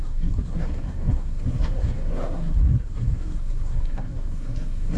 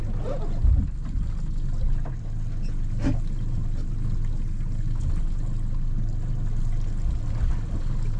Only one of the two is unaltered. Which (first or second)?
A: second